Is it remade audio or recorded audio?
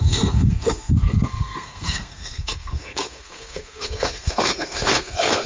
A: remade